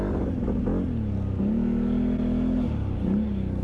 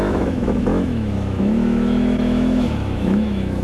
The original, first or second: first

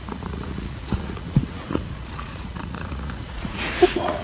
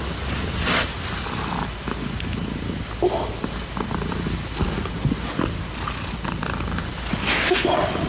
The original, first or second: second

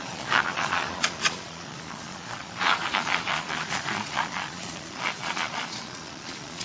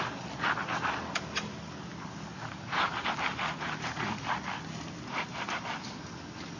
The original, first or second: second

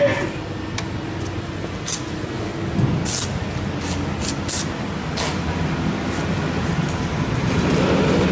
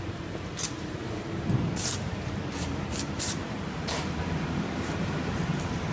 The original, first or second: first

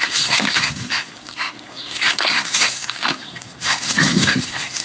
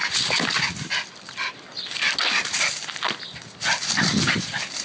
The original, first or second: second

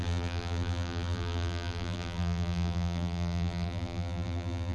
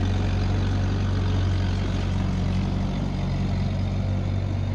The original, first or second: second